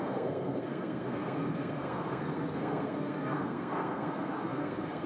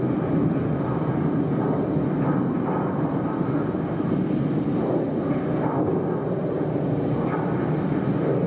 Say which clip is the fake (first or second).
first